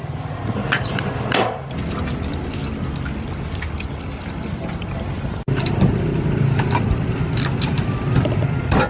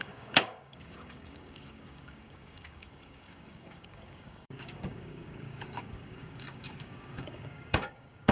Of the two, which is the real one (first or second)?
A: first